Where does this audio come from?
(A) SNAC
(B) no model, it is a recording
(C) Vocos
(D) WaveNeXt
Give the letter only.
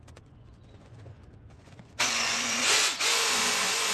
C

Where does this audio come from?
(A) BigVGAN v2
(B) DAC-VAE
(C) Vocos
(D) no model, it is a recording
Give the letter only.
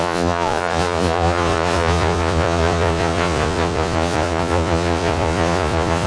C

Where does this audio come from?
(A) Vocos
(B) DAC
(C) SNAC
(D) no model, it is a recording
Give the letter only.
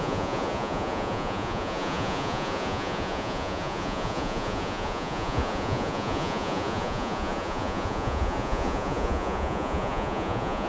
A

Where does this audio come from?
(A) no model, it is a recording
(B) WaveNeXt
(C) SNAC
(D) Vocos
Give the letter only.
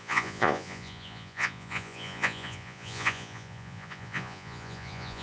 D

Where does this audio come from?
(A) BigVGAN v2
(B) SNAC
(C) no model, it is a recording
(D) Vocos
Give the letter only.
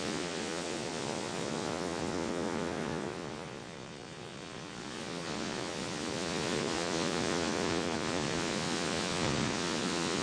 D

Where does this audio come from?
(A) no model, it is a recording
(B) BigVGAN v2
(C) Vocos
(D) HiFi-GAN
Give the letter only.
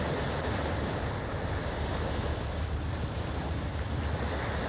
A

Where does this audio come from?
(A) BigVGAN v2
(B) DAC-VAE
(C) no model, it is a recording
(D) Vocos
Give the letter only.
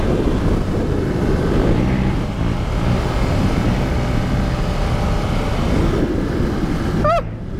C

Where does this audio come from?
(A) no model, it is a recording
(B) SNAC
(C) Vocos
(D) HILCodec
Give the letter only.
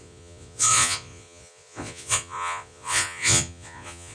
C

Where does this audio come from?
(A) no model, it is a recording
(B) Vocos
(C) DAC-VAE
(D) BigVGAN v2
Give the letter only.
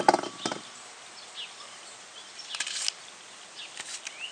A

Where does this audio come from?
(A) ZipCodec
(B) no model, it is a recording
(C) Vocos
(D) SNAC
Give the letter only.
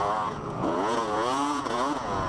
C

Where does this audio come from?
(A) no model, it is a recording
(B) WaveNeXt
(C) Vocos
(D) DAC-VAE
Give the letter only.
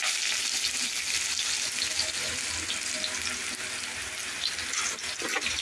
A